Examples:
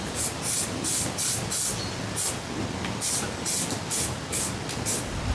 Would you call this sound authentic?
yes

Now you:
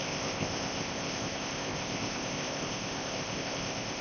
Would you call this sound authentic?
no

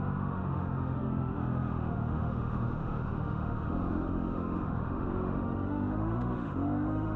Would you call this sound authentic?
no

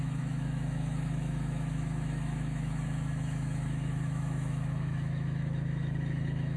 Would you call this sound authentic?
no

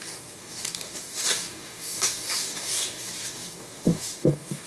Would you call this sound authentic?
no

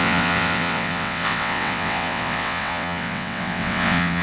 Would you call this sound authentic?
no